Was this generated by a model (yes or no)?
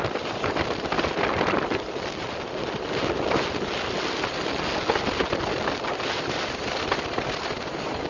no